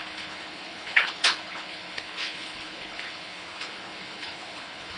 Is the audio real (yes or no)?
no